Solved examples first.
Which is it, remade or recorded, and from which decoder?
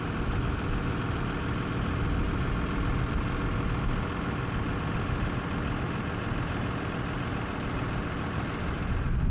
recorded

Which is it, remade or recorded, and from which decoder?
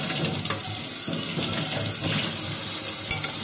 recorded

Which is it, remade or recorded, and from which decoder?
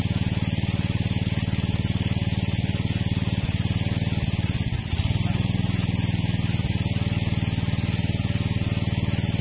recorded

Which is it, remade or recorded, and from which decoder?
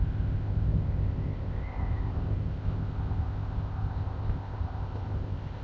remade, codec, ZipCodec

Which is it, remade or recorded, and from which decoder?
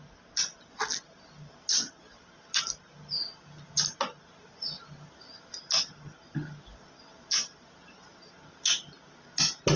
recorded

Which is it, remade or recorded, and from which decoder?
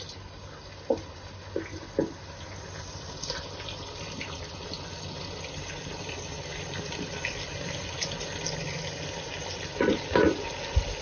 recorded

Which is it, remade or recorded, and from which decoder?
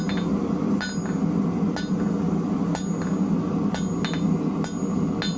recorded